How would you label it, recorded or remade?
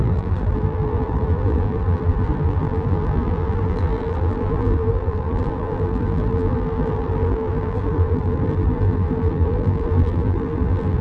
remade